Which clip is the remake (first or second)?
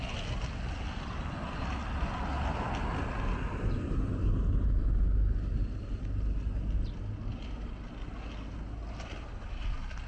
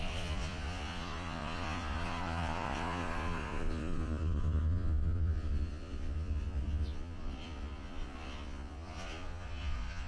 second